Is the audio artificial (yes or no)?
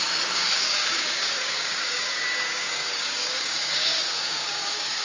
yes